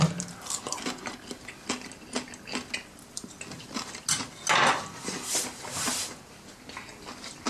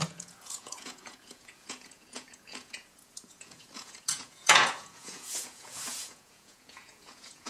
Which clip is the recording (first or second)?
first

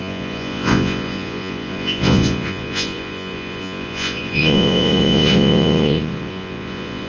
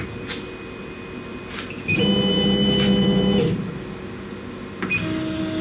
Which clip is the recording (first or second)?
second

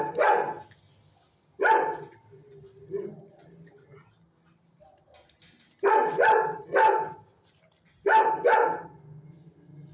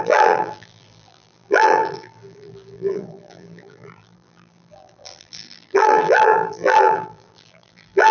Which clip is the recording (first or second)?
first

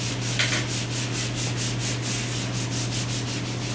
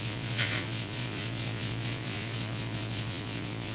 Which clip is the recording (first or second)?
first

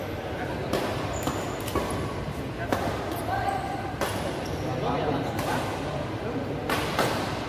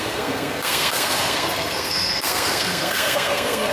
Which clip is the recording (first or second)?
first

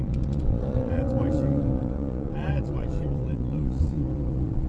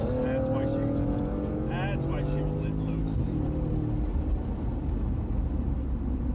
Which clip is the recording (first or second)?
second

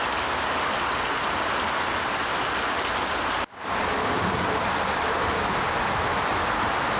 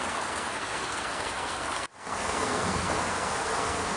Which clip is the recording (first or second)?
first